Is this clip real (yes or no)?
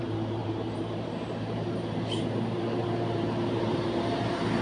no